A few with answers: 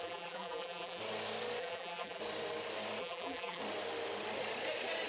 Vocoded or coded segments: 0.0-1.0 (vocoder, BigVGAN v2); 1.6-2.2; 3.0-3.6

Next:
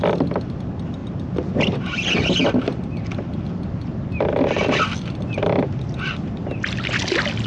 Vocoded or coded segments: 1.0-1.5 (vocoder, BigVGAN v2); 2.5-7.0

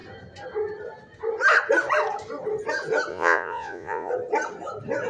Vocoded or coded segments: 3.1-4.1 (vocoder, Vocos)

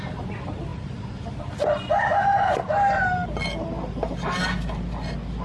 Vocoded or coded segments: none

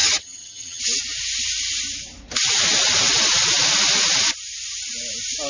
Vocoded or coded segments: 0.0-0.8 (vocoder, HiFi-GAN)

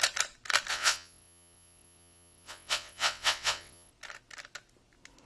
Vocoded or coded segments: 0.7-3.9 (vocoder, WaveNeXt)

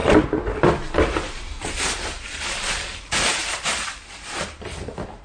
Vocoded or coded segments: none